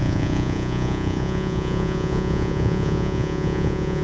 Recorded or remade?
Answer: remade